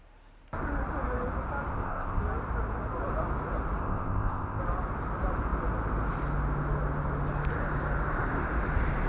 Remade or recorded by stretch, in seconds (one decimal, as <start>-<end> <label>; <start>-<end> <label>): 0.0-1.7 recorded; 1.7-2.2 remade; 2.2-3.8 recorded; 3.8-4.6 remade; 4.6-9.1 recorded